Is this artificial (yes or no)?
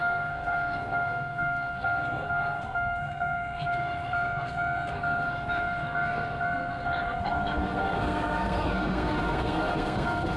yes